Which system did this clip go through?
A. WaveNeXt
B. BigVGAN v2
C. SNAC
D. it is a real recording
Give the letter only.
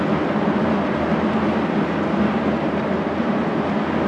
D